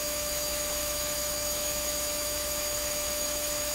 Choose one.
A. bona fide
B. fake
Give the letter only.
B